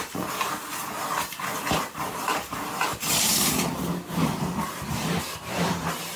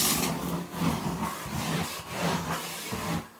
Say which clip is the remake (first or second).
first